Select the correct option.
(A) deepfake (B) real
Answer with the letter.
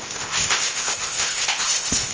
A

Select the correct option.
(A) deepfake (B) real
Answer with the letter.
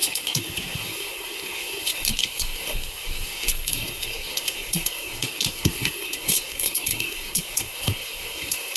A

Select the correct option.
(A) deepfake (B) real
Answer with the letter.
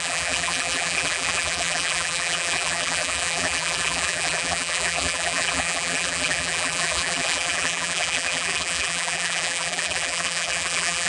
A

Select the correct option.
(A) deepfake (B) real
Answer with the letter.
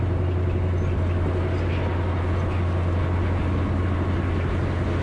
B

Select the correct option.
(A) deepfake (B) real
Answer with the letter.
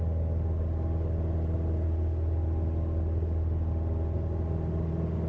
B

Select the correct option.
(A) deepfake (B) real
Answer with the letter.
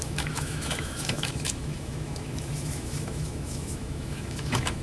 A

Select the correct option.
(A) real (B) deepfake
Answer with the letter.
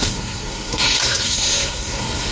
B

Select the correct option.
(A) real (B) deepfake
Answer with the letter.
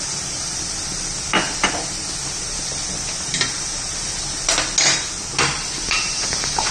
A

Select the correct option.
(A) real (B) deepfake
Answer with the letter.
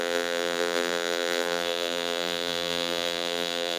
B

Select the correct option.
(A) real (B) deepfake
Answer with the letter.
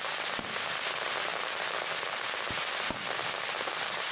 A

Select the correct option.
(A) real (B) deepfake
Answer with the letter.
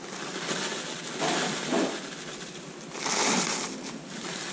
A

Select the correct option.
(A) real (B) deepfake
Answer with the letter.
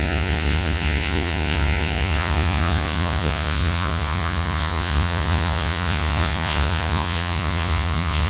B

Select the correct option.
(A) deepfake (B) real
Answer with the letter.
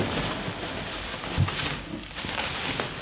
B